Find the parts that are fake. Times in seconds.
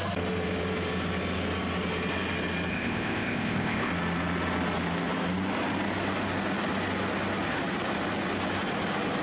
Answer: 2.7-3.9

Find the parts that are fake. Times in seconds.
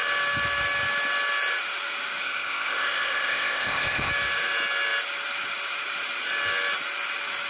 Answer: 2.2-4.1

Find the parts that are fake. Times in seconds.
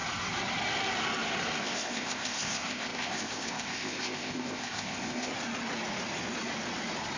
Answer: 1.6-5.3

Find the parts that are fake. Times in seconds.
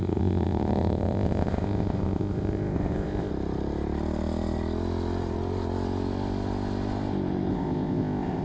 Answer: 0.0-3.3; 7.5-8.4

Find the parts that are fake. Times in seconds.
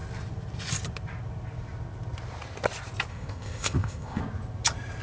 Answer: 3.1-4.2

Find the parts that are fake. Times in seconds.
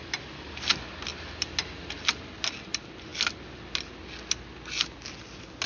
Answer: none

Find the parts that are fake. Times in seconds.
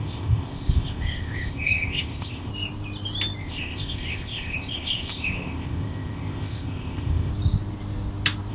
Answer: 0.0-2.5; 3.4-7.3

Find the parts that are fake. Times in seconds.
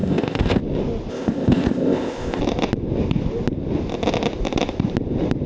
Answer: 0.0-0.6; 1.1-2.4